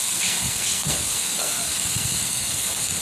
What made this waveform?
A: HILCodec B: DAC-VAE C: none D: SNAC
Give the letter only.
D